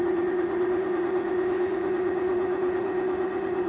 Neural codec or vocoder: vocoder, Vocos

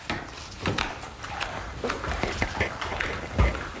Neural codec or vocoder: none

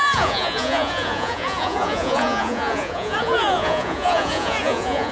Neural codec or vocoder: vocoder, Vocos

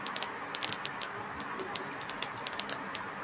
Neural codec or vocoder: none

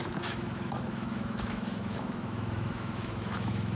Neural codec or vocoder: autoencoder, DAC-VAE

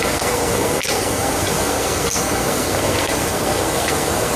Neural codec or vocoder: codec, SNAC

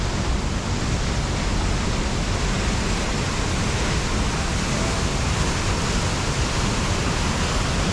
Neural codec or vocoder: none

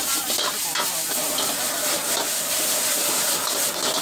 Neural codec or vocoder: none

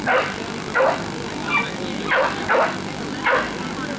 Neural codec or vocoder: none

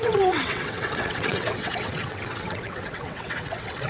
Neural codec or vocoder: vocoder, WaveNeXt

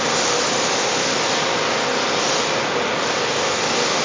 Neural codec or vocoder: none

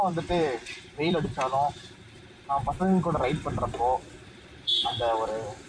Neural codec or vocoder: vocoder, BigVGAN v2